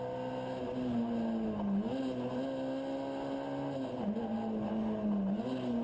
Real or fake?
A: real